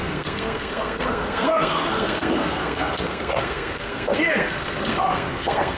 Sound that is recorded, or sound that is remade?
remade